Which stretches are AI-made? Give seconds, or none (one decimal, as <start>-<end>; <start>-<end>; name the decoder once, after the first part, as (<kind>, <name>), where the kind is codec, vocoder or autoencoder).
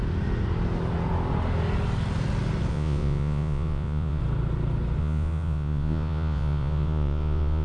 2.7-4.2 (vocoder, Vocos); 5.0-7.6